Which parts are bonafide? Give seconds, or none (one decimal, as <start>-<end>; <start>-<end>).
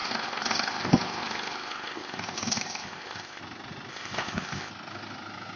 3.4-3.9; 4.7-5.6